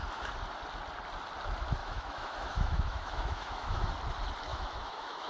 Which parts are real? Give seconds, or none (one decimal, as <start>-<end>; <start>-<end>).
0.0-1.8; 3.9-4.5